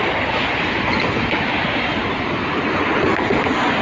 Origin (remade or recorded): recorded